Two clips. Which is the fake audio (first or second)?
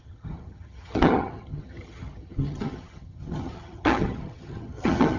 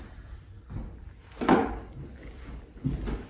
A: first